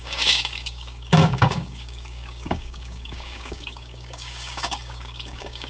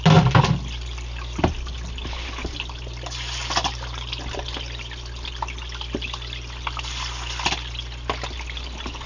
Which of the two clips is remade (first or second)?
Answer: first